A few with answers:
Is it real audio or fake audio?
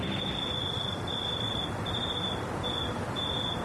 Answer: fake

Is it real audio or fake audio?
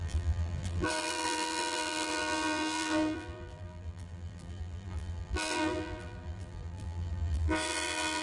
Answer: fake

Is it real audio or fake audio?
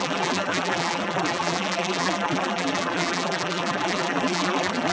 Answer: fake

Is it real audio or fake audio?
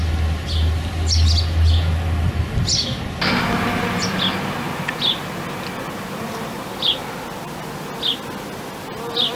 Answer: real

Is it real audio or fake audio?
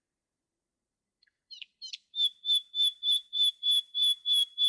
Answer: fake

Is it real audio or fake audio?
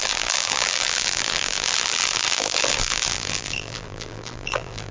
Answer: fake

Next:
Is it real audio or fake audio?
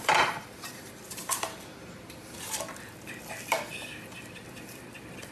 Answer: fake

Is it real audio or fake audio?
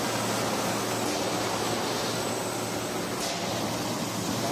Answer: real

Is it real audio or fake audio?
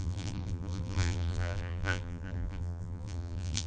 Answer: fake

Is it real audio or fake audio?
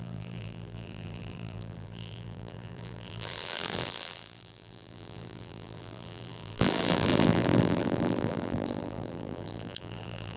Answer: fake